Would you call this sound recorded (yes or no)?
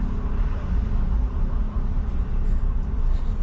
yes